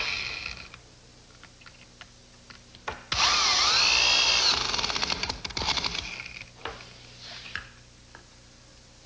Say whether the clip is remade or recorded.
recorded